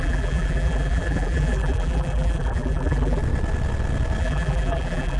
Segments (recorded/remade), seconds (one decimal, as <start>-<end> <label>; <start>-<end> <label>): 0.0-3.2 remade; 3.2-4.2 recorded; 4.2-5.2 remade